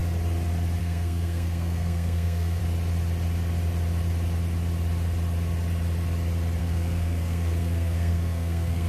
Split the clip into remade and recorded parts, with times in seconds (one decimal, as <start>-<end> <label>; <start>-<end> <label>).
0.0-0.8 recorded; 0.8-2.6 remade; 2.6-6.6 recorded; 6.6-8.9 remade

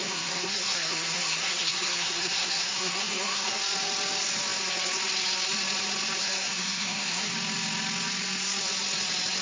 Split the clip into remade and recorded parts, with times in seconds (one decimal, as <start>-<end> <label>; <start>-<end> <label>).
0.0-3.6 remade; 3.6-6.2 recorded; 6.2-7.3 remade; 7.3-9.4 recorded

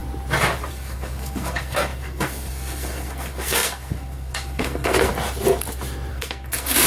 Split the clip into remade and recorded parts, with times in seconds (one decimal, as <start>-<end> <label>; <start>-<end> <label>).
0.0-0.7 recorded; 0.7-5.1 remade; 5.1-6.1 recorded; 6.1-6.9 remade

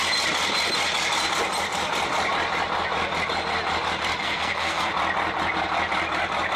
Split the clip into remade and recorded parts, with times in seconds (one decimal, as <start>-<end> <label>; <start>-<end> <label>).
0.0-4.2 recorded; 4.2-4.9 remade; 4.9-6.6 recorded

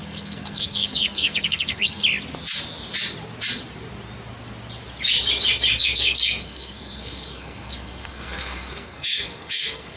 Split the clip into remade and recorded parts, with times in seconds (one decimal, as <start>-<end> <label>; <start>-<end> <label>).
0.0-2.0 remade; 2.0-5.8 recorded; 5.8-10.0 remade

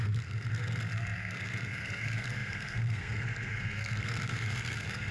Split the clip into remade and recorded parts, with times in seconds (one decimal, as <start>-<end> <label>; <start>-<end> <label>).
0.0-5.1 remade

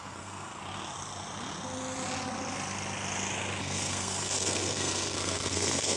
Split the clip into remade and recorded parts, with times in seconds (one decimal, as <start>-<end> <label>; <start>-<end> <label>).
0.0-0.5 remade; 0.5-3.6 recorded; 3.6-6.0 remade

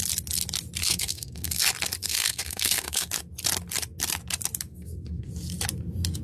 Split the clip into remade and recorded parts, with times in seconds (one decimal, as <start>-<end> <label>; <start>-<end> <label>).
0.0-0.8 recorded; 0.8-1.6 remade; 1.6-2.0 recorded; 2.0-3.1 remade; 3.1-4.7 recorded; 4.7-5.3 remade; 5.3-6.2 recorded